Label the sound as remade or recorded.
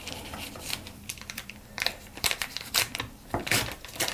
remade